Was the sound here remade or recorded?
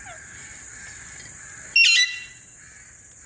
recorded